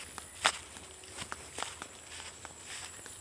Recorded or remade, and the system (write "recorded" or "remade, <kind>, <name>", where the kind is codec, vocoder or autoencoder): recorded